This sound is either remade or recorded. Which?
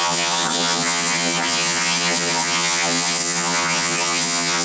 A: remade